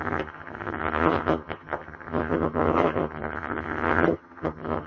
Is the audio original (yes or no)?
no